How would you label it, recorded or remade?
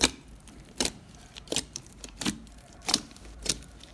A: remade